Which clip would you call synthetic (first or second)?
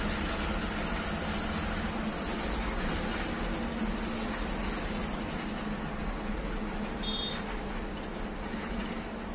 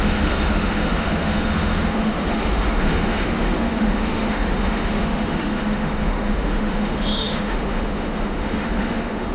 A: second